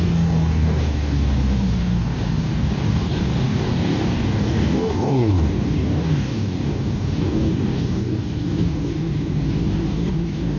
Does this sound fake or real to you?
fake